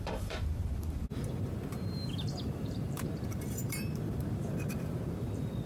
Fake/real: fake